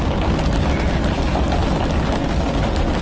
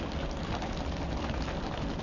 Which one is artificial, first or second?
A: second